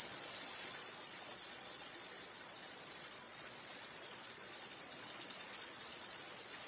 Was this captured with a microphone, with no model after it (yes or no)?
no